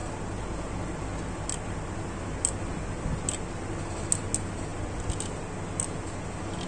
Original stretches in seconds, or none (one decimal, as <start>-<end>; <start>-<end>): 0.0-6.7